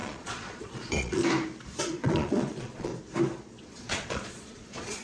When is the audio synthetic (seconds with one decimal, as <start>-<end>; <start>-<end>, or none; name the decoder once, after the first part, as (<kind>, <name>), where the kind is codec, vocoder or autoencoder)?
0.0-1.2 (vocoder, Vocos); 1.8-2.9; 3.5-5.0